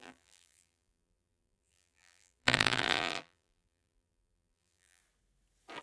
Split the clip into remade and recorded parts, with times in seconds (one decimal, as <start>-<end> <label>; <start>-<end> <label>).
0.0-5.0 remade; 5.0-5.8 recorded